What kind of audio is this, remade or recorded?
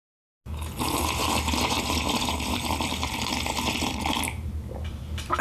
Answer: recorded